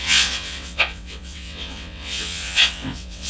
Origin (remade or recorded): remade